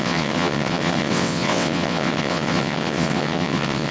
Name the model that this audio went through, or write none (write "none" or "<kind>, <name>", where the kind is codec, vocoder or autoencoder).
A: vocoder, WaveNeXt